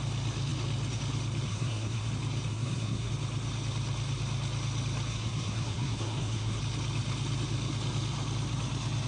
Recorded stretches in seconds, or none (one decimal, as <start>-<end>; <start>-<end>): 0.0-1.5; 2.1-2.5; 3.1-5.1; 6.6-9.1

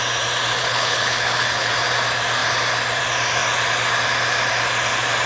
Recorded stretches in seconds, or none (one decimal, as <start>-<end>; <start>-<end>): 0.0-0.6; 1.7-5.3

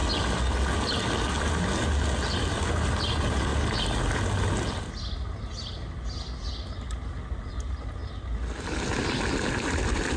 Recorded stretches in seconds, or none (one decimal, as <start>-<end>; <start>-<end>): 0.0-10.2

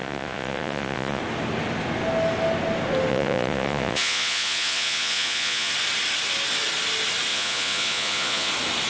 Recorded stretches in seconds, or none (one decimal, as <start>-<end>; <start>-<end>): 1.2-3.1; 5.7-7.3; 8.5-8.9

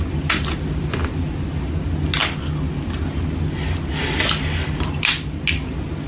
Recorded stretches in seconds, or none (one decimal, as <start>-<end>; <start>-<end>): 0.0-6.1